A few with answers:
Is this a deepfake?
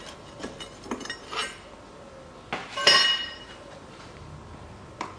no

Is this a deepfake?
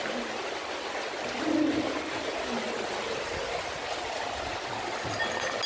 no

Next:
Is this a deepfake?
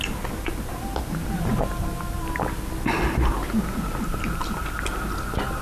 no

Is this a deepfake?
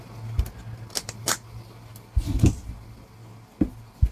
no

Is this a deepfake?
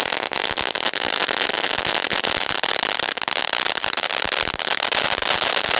no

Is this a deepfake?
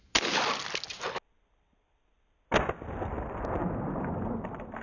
no